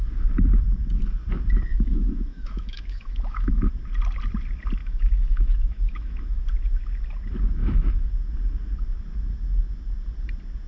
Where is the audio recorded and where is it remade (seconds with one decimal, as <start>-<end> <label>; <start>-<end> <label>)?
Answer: 0.0-1.7 recorded; 1.7-3.7 remade; 3.7-4.8 recorded; 4.8-6.4 remade; 6.4-7.6 recorded; 7.6-8.1 remade; 8.1-10.7 recorded